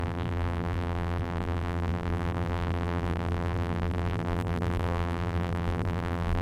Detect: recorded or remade remade